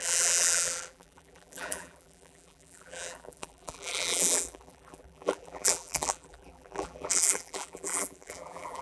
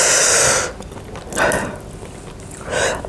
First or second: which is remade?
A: first